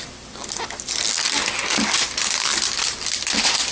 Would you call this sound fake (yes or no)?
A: no